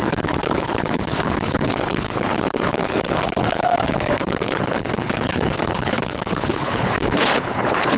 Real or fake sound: fake